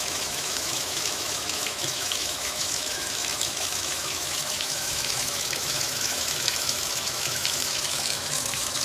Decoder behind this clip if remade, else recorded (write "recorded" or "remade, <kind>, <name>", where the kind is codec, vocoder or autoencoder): remade, autoencoder, DAC-VAE